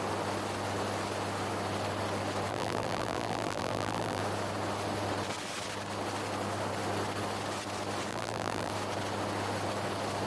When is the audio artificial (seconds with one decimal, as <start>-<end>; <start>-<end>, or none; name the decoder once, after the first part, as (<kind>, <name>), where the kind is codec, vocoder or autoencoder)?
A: 2.5-4.2 (vocoder, BigVGAN v2); 8.1-8.7